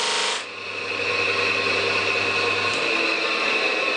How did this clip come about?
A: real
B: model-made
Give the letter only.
A